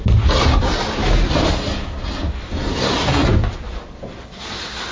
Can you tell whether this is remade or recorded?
recorded